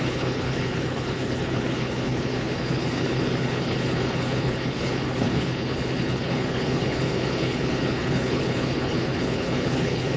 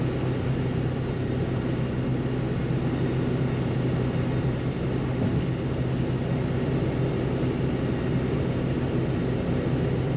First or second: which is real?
second